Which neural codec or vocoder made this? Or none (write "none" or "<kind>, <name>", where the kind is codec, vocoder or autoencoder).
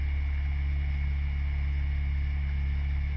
none